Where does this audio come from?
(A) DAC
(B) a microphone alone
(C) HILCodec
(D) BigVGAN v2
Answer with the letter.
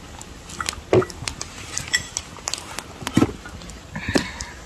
B